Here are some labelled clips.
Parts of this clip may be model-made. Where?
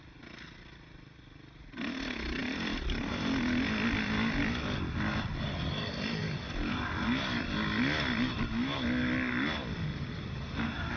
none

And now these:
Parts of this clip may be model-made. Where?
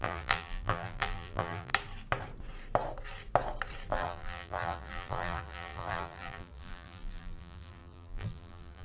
0.0-1.7 (vocoder, BigVGAN v2); 3.9-8.8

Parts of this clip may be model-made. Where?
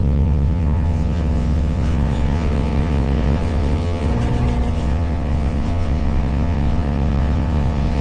0.0-4.1 (vocoder, WaveNeXt); 4.7-8.0